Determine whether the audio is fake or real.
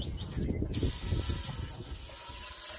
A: real